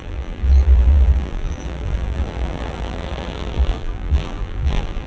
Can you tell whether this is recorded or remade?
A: remade